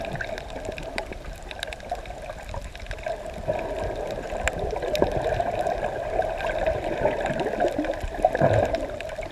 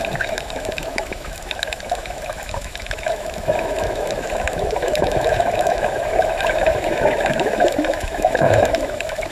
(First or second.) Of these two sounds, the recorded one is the first